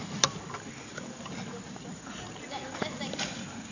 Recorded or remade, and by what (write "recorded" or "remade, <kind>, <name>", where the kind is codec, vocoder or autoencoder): recorded